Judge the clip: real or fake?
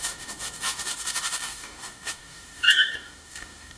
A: fake